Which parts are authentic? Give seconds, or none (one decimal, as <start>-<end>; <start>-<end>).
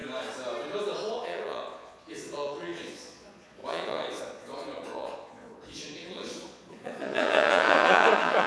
0.0-1.1